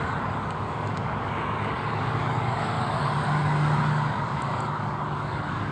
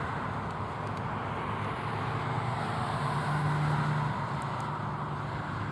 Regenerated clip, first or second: first